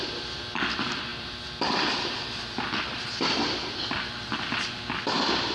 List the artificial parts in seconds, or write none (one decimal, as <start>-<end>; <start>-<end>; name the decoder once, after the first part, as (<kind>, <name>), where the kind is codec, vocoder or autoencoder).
1.1-3.1 (vocoder, BigVGAN v2)